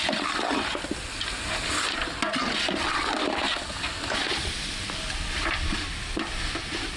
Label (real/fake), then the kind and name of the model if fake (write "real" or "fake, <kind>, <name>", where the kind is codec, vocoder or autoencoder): real